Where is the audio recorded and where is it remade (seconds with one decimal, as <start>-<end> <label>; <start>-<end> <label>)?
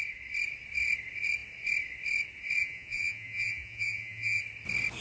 0.0-2.6 recorded; 2.6-4.4 remade; 4.4-5.0 recorded